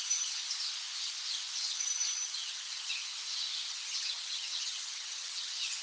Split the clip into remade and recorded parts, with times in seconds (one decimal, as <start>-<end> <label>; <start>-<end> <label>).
0.0-0.4 remade; 0.4-1.6 recorded; 1.6-3.1 remade; 3.1-3.7 recorded; 3.7-5.8 remade